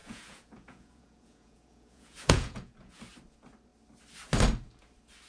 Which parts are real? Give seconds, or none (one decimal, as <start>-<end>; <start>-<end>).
3.0-5.3